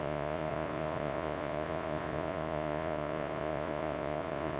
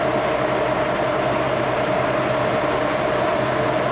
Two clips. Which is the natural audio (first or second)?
second